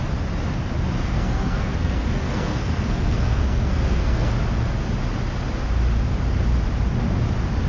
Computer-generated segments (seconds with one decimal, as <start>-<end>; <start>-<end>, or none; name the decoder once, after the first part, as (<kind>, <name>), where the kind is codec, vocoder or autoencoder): 1.0-4.3 (codec, SNAC)